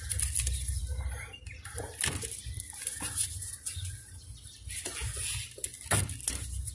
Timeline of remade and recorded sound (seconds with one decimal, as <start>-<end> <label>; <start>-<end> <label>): 0.0-6.7 recorded